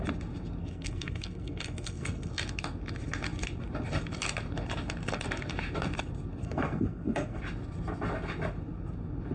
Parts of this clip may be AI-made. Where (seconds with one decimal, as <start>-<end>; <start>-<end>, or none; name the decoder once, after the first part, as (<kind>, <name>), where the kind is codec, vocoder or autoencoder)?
0.6-2.3 (codec, SNAC); 6.4-7.4